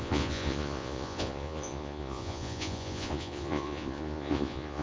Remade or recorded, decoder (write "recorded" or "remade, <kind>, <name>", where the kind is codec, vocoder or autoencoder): remade, vocoder, Vocos